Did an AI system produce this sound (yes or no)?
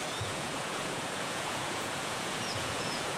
yes